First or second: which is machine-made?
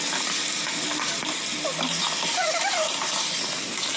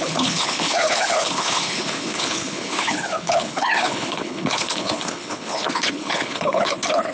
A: second